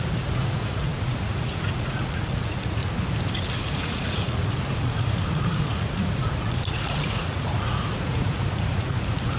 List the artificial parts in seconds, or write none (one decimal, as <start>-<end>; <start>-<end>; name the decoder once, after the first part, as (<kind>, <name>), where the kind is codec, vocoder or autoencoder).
0.0-2.8 (vocoder, Vocos); 3.5-9.4